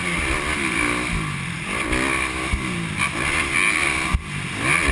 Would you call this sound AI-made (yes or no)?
no